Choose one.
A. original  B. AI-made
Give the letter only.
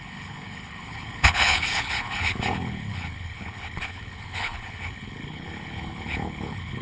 B